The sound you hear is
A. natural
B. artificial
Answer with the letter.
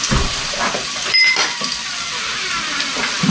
B